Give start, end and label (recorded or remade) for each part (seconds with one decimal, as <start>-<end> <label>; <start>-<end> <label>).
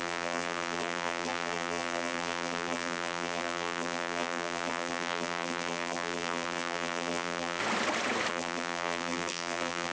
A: 0.0-7.6 remade; 7.6-8.3 recorded; 8.3-9.9 remade